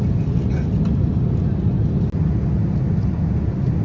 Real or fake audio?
real